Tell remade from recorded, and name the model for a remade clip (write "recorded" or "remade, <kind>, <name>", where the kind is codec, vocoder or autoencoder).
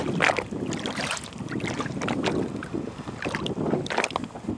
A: recorded